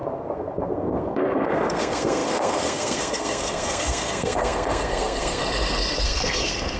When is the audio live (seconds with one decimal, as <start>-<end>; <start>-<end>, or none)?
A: 5.4-6.0